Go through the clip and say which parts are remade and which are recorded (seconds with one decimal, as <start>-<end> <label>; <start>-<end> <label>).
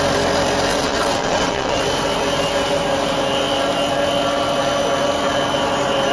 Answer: 0.0-0.7 recorded; 0.7-1.8 remade; 1.8-6.1 recorded